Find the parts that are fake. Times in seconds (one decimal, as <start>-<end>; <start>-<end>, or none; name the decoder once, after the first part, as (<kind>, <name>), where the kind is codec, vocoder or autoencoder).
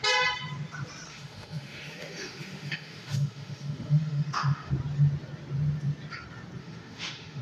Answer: 1.1-4.7 (autoencoder, DAC-VAE); 6.6-7.4